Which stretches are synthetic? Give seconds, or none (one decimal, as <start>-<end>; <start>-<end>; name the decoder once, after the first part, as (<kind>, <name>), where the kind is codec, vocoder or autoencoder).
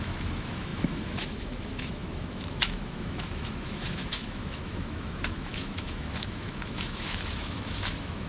0.0-8.3 (autoencoder, DAC-VAE)